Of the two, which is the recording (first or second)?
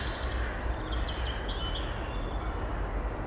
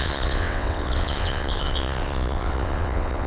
first